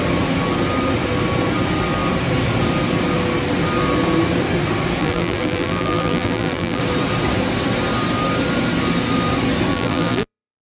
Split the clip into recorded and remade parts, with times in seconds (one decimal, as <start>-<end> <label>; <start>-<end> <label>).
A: 0.0-5.0 recorded; 5.0-6.8 remade; 6.8-9.7 recorded; 9.7-10.6 remade